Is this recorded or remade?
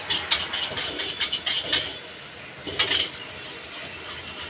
recorded